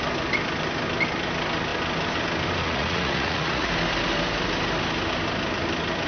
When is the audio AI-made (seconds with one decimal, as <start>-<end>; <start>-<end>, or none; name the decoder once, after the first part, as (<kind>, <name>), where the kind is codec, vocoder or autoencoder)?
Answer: 2.6-3.7 (vocoder, Vocos)